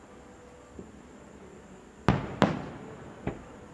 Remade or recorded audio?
recorded